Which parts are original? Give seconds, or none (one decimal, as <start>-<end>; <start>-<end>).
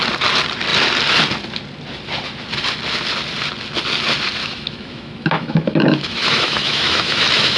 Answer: 0.0-4.4